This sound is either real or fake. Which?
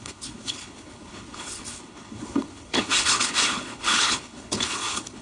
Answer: fake